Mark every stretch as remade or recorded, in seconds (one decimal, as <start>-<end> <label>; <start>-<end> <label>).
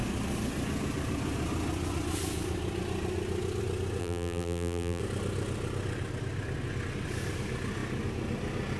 0.0-4.0 recorded; 4.0-5.0 remade; 5.0-8.8 recorded